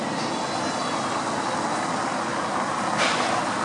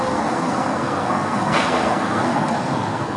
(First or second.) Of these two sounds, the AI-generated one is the second